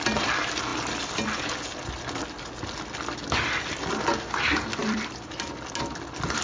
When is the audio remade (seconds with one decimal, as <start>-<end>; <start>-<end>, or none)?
4.8-5.6